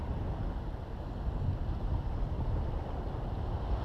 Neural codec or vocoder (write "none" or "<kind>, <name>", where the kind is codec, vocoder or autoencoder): none